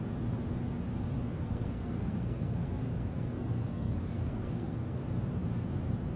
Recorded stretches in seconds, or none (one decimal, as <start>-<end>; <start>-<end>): 0.0-1.3; 5.0-6.2